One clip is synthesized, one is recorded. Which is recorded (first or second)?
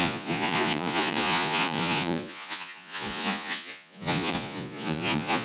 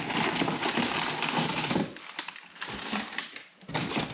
second